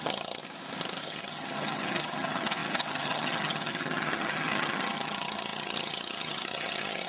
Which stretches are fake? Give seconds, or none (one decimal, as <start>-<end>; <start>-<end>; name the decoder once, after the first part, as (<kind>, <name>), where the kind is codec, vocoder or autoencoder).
0.0-0.4 (vocoder, HiFi-GAN); 1.0-7.1